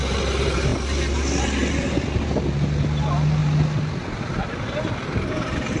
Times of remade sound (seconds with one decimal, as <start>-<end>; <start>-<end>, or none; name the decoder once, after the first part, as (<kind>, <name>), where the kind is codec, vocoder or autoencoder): none